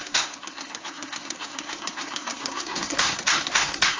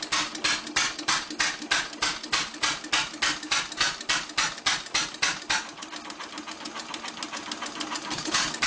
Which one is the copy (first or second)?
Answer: first